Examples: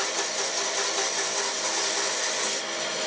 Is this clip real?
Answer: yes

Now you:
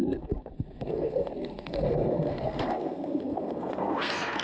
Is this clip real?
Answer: no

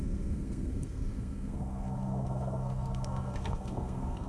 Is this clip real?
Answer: no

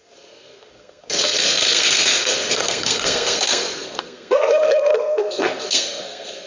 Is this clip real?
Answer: no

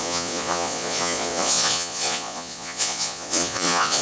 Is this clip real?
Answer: no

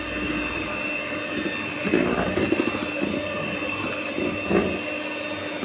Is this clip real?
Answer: yes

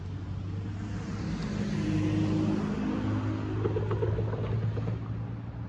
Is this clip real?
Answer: yes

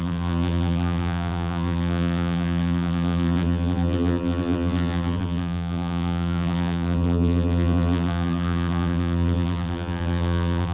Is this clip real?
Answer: no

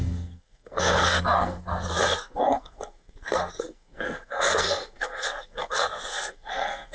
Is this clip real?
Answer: no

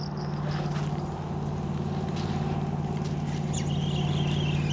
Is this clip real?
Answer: yes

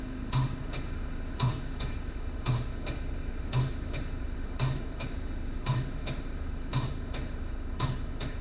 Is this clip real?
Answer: no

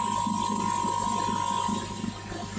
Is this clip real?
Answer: yes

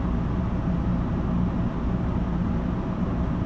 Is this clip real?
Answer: yes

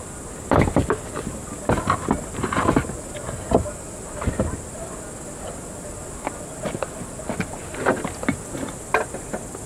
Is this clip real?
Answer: yes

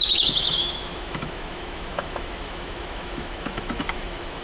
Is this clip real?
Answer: no